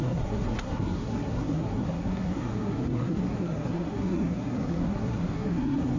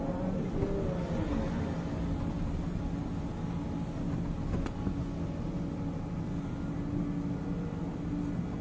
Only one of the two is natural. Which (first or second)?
second